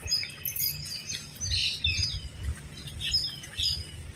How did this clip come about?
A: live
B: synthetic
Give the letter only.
A